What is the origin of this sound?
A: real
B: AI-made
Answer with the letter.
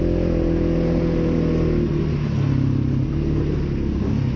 A